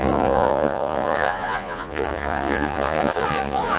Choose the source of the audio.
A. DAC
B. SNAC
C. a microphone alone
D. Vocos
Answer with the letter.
D